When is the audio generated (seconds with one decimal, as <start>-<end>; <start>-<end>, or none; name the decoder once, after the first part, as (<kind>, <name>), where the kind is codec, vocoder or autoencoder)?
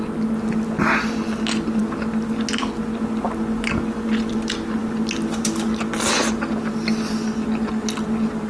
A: none